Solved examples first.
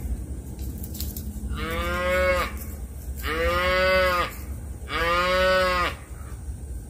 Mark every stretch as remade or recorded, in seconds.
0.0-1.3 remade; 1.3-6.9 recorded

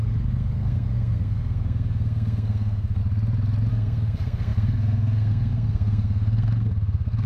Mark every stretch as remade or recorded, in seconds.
0.0-3.0 remade; 3.0-3.7 recorded; 3.7-7.3 remade